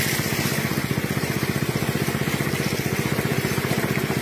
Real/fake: real